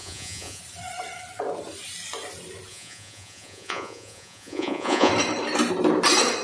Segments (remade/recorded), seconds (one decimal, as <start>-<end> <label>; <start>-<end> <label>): 0.0-0.6 remade; 0.6-2.7 recorded; 2.7-5.1 remade; 5.1-6.4 recorded